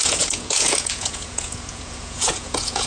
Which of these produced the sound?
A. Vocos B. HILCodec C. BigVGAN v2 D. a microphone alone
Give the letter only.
A